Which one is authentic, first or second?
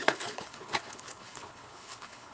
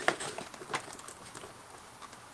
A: second